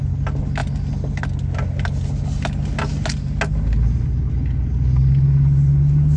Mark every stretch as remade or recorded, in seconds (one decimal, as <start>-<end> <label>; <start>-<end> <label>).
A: 0.0-6.2 recorded